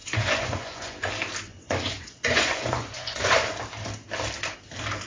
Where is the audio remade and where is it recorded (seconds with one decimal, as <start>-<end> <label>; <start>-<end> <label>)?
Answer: 0.0-1.1 remade; 1.1-1.5 recorded; 1.5-3.6 remade; 3.6-5.1 recorded